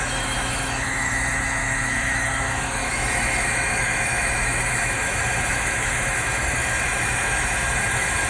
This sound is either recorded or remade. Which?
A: remade